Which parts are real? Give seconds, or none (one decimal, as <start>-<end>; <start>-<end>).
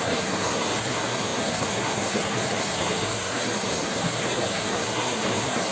none